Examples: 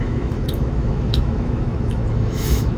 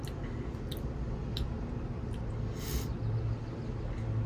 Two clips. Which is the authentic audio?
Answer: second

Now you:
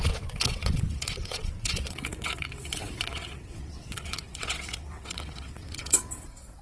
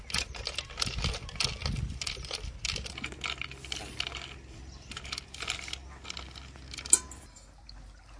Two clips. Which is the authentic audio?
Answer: second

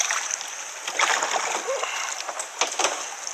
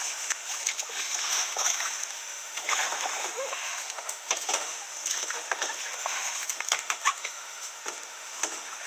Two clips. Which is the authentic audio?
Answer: first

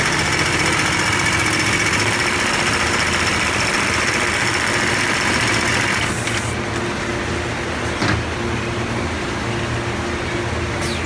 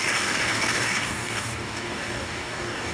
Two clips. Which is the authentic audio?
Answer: first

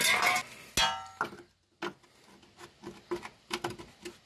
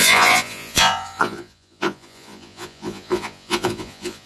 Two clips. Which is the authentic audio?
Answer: first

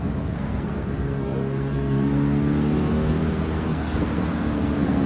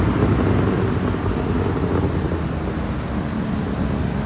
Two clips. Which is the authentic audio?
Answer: second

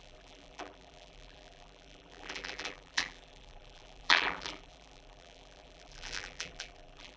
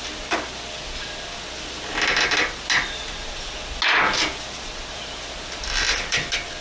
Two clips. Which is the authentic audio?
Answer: second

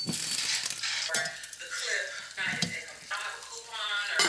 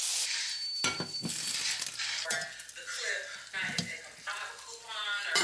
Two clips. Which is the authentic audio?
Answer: second